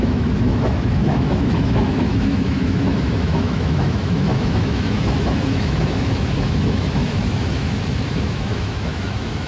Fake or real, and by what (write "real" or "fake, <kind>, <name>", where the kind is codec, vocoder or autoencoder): fake, autoencoder, DAC-VAE